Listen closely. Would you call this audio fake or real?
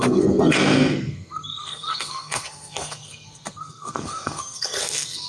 fake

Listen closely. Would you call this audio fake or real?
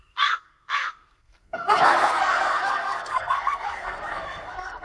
fake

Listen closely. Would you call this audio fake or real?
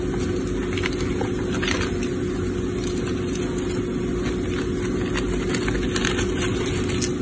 real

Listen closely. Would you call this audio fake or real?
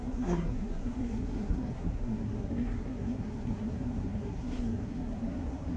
fake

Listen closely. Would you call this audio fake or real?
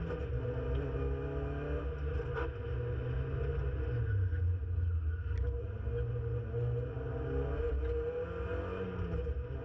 real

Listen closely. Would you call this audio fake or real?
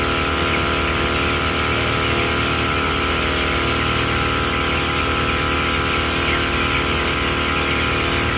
real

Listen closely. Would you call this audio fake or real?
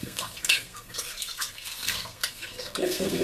fake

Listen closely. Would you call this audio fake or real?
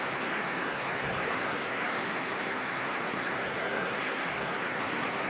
fake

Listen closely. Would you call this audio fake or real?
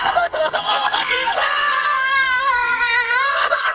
fake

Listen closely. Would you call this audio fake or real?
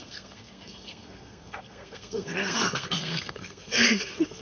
fake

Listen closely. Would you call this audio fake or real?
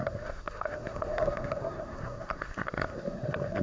fake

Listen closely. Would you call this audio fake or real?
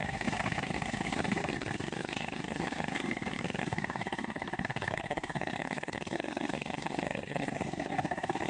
fake